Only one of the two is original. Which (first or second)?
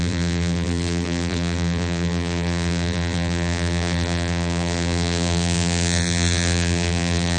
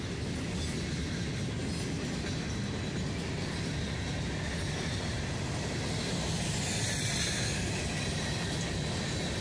second